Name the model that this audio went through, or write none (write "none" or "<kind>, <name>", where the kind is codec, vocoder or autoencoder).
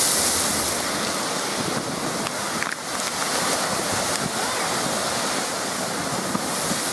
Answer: none